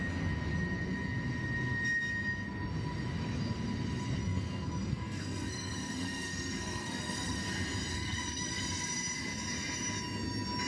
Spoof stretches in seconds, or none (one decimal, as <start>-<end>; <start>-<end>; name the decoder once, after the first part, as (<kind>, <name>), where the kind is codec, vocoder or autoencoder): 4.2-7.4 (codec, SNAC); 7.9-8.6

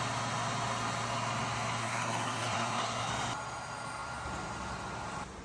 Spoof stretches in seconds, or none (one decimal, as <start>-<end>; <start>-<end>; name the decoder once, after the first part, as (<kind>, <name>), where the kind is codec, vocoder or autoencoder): 1.8-3.1 (codec, SNAC)

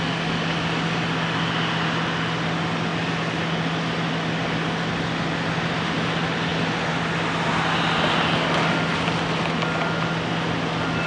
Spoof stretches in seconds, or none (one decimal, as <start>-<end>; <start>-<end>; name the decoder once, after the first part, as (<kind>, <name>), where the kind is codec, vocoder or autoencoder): none

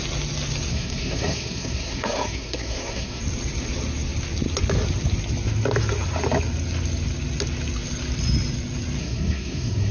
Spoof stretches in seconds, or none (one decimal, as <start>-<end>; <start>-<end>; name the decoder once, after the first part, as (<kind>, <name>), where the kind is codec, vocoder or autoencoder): 0.7-3.2 (codec, SNAC); 9.0-9.9